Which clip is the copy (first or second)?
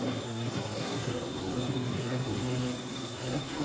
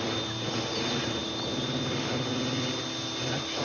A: first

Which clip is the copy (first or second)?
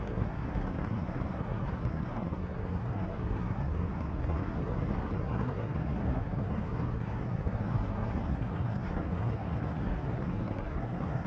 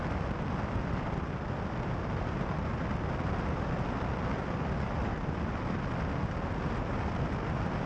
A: first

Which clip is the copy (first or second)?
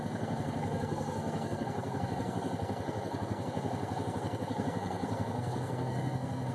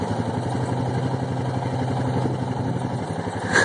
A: first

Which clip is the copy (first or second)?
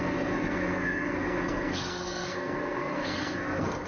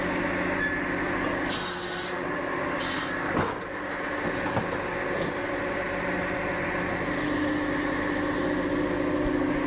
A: first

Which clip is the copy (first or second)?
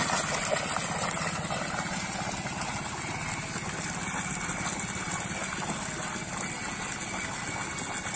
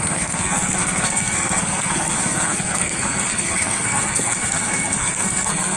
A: second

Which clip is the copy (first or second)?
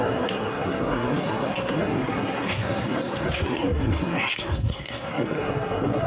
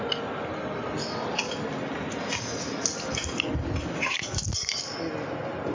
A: first